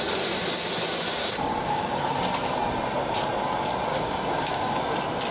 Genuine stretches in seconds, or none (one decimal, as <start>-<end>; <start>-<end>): 0.0-1.1; 2.0-3.9; 4.8-5.3